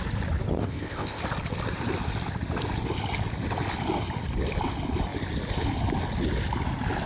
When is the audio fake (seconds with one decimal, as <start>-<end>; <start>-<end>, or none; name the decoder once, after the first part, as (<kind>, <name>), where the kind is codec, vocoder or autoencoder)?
0.6-1.2 (codec, ZipCodec)